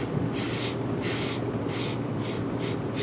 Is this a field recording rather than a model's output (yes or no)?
yes